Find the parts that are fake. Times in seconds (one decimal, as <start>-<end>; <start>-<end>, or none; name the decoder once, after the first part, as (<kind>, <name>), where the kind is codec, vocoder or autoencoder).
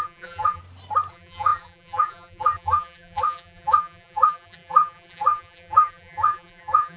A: 0.0-0.6 (vocoder, BigVGAN v2); 1.1-7.0